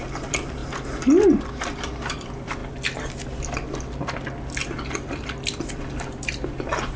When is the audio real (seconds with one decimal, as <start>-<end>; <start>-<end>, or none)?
0.6-1.5; 2.6-4.9

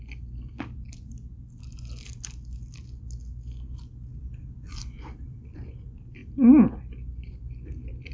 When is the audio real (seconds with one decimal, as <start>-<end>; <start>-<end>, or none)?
0.0-4.1; 5.7-8.1

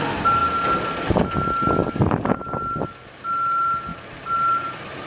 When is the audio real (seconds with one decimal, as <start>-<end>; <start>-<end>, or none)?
0.0-1.8; 2.4-3.9

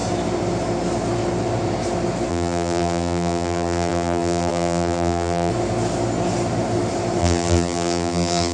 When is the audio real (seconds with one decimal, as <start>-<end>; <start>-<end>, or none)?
0.0-2.3; 5.5-7.2

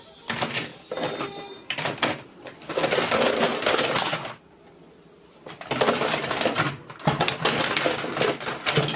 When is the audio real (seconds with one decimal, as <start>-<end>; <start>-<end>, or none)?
0.0-9.0

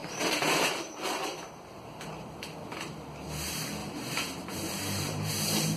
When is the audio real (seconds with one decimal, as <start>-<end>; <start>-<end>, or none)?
1.6-3.8; 5.3-5.8

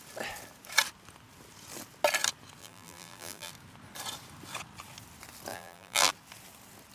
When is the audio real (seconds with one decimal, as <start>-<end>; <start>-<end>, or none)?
0.0-2.6; 3.5-5.5; 6.1-6.9

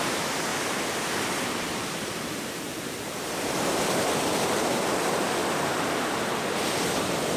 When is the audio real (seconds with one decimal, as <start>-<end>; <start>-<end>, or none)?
0.5-1.5; 5.4-7.0